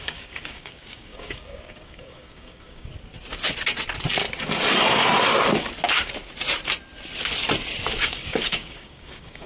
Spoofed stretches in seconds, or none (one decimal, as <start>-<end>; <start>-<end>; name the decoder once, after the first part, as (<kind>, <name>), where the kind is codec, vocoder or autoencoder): 0.0-2.9 (codec, DAC); 8.0-9.5